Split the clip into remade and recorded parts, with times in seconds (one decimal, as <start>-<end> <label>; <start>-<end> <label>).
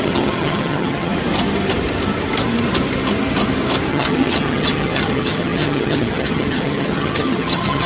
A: 0.0-1.1 remade; 1.1-3.9 recorded; 3.9-7.9 remade